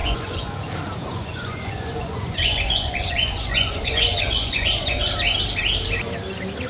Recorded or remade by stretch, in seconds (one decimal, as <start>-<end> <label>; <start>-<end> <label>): 0.0-0.6 remade; 0.6-1.1 recorded; 1.1-5.1 remade; 5.1-6.7 recorded